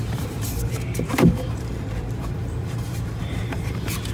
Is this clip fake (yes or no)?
yes